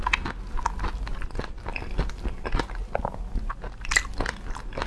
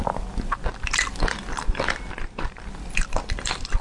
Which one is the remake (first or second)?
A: second